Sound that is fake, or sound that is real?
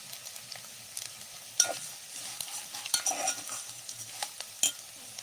real